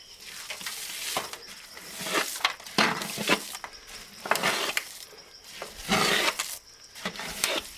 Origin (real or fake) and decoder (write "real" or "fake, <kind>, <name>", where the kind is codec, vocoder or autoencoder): real